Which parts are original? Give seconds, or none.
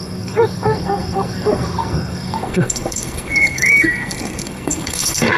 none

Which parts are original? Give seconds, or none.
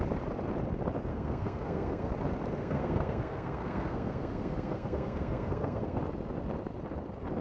0.0-1.1; 2.1-2.6; 6.0-7.4